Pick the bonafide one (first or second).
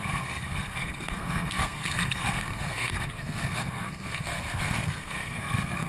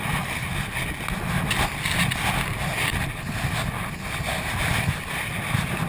second